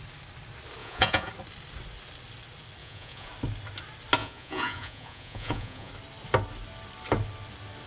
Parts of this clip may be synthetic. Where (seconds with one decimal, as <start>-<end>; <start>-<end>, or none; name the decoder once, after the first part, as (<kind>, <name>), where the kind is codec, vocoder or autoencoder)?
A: 0.8-1.3 (vocoder, Vocos); 2.8-3.3; 4.2-5.9